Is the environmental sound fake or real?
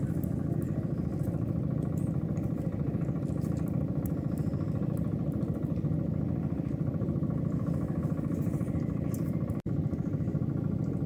real